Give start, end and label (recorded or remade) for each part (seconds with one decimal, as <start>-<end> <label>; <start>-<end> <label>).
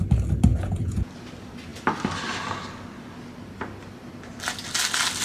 0.0-0.5 recorded; 0.5-1.1 remade; 1.1-5.2 recorded